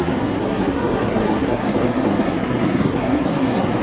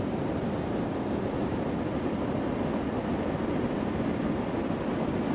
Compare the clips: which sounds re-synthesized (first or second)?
first